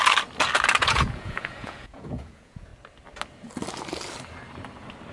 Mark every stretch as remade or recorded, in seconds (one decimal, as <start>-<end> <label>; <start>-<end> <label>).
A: 0.0-0.8 recorded; 0.8-2.7 remade; 2.7-5.1 recorded